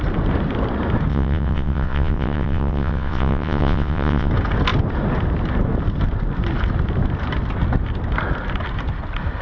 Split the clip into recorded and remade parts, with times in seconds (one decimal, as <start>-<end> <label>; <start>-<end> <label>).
0.0-1.1 recorded; 1.1-4.3 remade; 4.3-9.4 recorded